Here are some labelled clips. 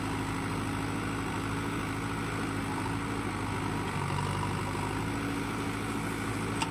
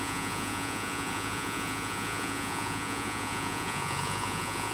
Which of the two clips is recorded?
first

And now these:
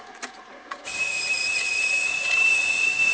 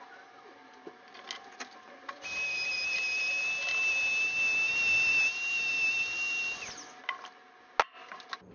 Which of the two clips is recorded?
second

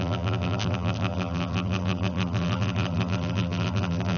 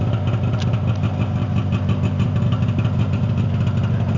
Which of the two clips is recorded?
second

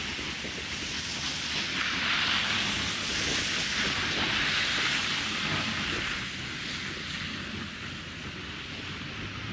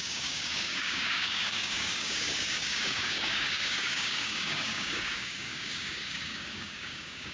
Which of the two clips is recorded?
first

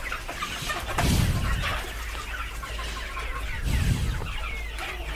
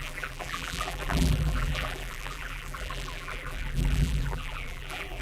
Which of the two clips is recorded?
first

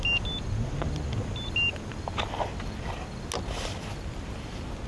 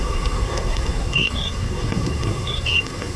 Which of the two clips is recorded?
first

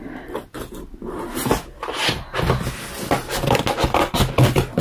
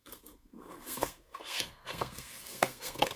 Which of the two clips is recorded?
first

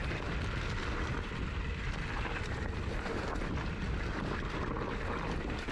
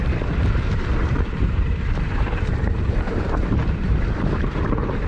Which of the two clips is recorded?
first